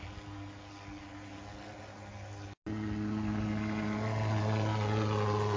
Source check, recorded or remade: recorded